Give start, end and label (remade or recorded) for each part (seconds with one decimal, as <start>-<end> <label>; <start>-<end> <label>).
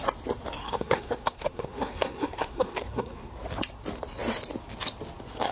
0.0-0.6 recorded; 0.6-3.3 remade; 3.3-5.5 recorded